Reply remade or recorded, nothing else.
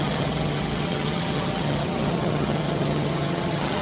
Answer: remade